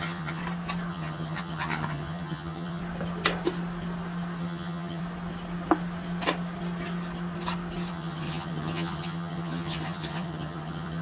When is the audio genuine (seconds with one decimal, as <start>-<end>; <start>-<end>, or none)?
0.4-0.9; 2.8-4.4; 5.0-7.9